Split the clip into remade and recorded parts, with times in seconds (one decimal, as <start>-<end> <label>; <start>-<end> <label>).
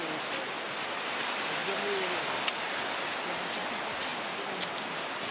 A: 0.0-5.3 recorded